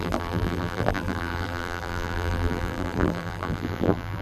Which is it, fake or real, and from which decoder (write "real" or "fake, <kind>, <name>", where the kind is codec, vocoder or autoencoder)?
fake, vocoder, BigVGAN v2